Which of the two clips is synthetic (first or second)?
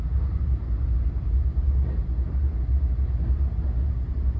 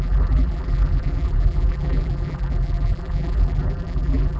second